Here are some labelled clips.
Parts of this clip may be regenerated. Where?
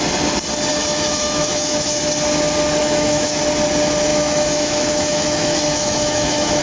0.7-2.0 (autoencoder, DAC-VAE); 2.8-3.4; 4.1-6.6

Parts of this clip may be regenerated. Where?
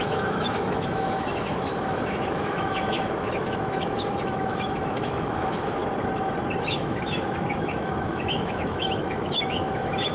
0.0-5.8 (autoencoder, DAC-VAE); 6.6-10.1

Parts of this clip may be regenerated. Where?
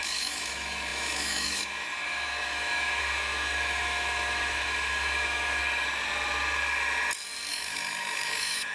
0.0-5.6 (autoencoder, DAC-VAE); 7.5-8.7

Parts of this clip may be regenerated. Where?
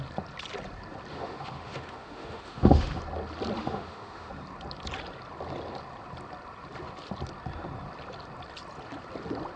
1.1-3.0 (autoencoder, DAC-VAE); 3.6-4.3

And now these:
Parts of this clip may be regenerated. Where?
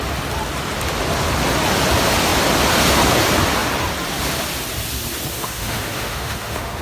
5.3-6.8 (autoencoder, DAC-VAE)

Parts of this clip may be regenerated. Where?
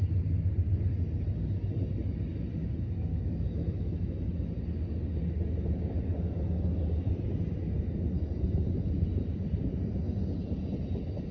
2.6-4.3 (autoencoder, DAC-VAE)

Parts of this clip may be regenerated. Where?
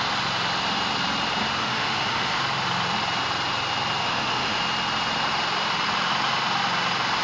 1.6-2.4 (autoencoder, DAC-VAE); 4.0-4.6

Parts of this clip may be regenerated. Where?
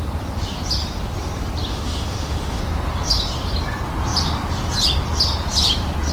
1.7-2.6 (autoencoder, DAC-VAE)